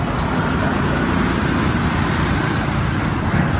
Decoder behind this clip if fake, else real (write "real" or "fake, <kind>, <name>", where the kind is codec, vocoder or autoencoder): real